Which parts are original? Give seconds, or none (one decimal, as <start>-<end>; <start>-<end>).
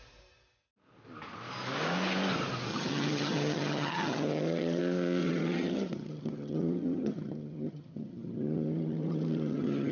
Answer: 0.0-2.7; 4.8-5.2